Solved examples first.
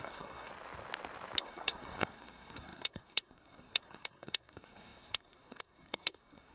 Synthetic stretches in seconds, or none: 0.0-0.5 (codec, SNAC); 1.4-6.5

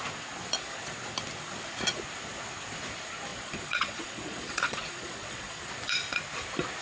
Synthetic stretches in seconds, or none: 3.3-5.6 (vocoder, Vocos)

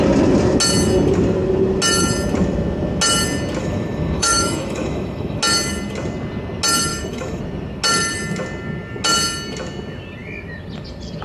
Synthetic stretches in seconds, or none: 3.6-5.4 (autoencoder, DAC-VAE); 6.9-7.4

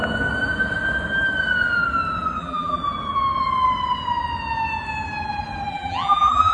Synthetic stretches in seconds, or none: 2.4-2.8 (vocoder, BigVGAN v2); 5.7-6.5

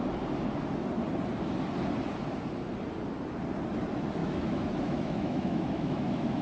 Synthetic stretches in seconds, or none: 4.2-6.4 (autoencoder, DAC-VAE)